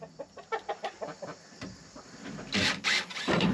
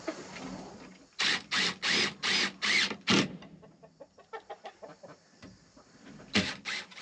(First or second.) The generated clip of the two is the second